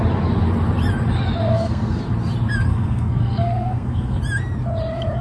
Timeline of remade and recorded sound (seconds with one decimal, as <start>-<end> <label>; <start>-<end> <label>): 0.0-1.4 recorded; 1.4-2.0 remade; 2.0-2.7 recorded; 2.7-4.2 remade; 4.2-5.2 recorded